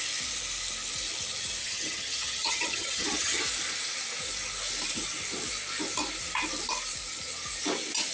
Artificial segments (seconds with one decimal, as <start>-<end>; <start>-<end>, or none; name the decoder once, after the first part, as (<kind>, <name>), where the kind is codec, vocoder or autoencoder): 1.6-3.4 (vocoder, HiFi-GAN)